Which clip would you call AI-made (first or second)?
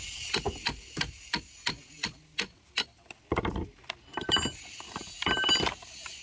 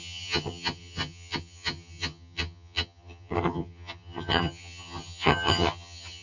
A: second